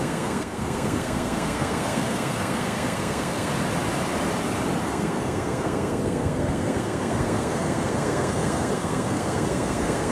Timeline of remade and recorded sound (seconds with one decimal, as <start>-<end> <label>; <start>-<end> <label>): 0.0-3.5 remade; 3.5-4.8 recorded; 4.8-10.1 remade